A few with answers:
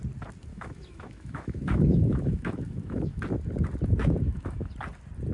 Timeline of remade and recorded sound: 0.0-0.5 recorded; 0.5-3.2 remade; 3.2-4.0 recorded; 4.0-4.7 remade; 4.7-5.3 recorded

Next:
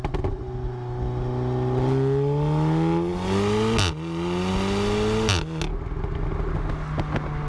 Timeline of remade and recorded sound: 0.0-7.5 recorded

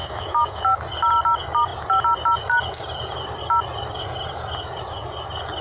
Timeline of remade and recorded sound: 0.0-0.6 remade; 0.6-5.6 recorded

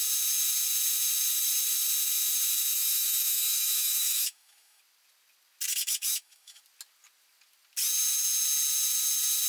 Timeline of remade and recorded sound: 0.0-2.7 recorded; 2.7-4.8 remade; 4.8-5.7 recorded; 5.7-6.6 remade; 6.6-9.5 recorded